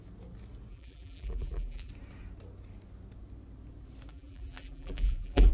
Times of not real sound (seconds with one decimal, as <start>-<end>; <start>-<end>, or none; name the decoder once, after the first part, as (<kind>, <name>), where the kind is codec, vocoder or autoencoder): 0.7-1.9 (vocoder, BigVGAN v2); 4.1-5.5